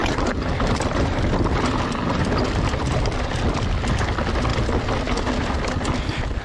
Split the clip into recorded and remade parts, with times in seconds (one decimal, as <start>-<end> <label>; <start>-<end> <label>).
0.0-3.8 remade; 3.8-6.4 recorded